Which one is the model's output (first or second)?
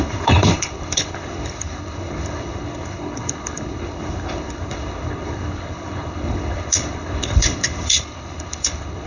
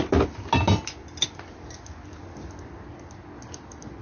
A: first